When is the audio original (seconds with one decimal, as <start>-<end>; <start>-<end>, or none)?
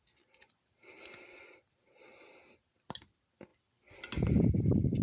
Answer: 0.0-5.0